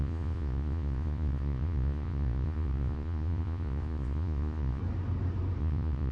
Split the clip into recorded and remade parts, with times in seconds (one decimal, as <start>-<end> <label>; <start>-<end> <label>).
0.0-4.8 remade; 4.8-5.6 recorded; 5.6-6.1 remade